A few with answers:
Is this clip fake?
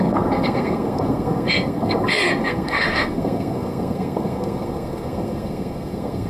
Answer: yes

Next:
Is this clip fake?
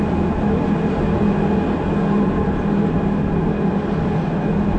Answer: no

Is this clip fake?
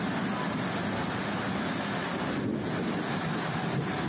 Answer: no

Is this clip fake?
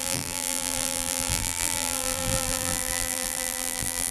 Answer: yes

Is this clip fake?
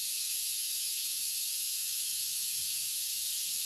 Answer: yes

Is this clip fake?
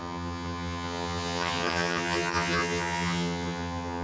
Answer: yes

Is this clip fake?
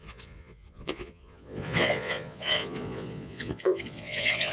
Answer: yes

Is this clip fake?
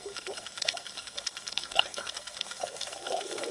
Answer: yes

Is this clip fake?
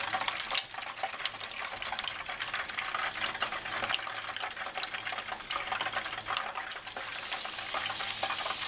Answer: no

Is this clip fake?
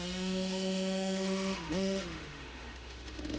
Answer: yes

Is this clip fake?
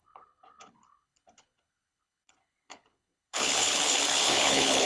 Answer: yes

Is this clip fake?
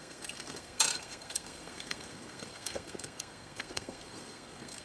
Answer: yes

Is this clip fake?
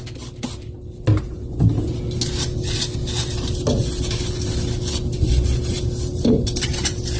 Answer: no